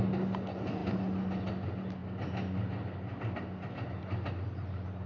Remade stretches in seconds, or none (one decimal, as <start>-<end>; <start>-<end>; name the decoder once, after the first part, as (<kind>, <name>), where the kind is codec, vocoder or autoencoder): none